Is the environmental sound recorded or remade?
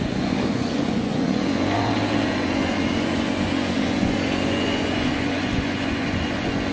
remade